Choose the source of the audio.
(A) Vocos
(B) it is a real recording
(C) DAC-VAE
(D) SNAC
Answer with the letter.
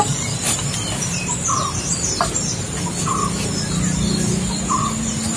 B